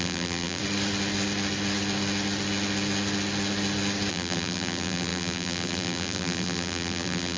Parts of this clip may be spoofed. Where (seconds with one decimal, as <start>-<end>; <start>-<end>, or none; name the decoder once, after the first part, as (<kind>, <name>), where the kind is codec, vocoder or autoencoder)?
0.0-0.6 (vocoder, BigVGAN v2); 4.1-7.4